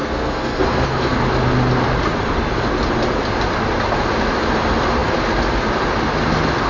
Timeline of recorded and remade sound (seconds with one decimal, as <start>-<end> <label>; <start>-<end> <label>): 0.0-1.2 remade; 1.2-6.7 recorded